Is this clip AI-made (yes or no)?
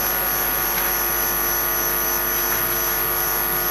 no